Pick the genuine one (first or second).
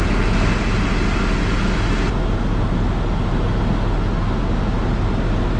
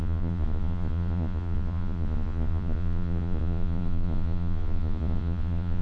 first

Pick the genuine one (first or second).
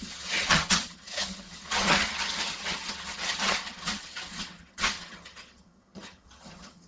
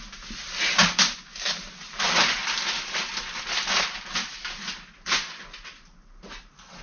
second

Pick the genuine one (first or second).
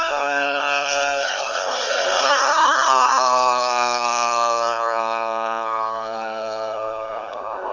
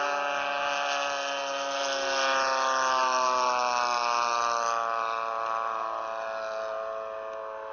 second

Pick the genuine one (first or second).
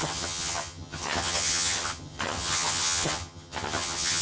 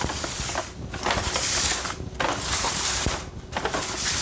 second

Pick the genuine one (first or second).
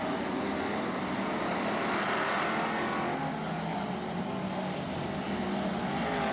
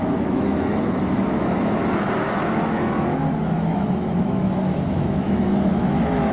first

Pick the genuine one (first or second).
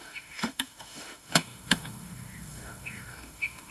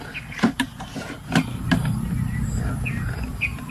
second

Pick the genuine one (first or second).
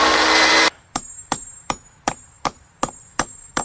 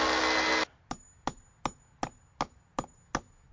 second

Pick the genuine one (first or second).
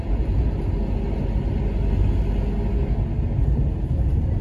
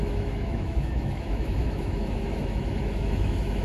first